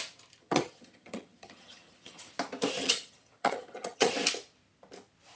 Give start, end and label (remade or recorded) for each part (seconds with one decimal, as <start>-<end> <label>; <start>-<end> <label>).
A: 0.0-0.4 recorded; 0.4-2.3 remade; 2.3-2.8 recorded; 2.8-4.1 remade; 4.1-5.4 recorded